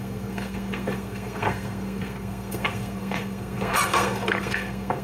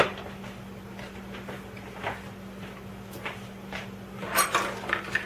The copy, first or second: first